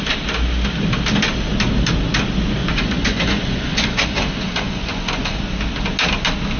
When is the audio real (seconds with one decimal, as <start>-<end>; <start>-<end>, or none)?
0.0-2.6; 5.4-6.6

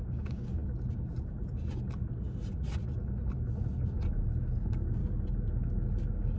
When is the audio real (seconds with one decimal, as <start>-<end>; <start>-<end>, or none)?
0.6-4.4; 5.0-6.4

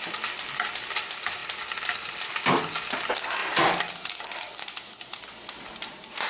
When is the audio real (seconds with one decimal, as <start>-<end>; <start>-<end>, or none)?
0.0-6.3

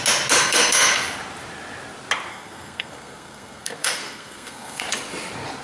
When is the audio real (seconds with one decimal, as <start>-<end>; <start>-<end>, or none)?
0.0-0.4; 0.9-2.3; 4.8-5.6

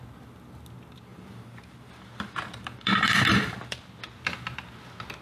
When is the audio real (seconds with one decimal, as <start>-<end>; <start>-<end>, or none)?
0.0-1.1; 3.8-5.2

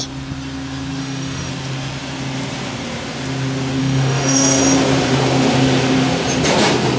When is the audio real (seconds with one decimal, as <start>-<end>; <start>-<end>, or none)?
0.0-1.0; 1.5-3.8; 4.6-7.0

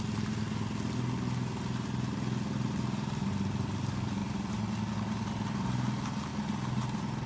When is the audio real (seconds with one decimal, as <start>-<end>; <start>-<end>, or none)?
0.0-7.3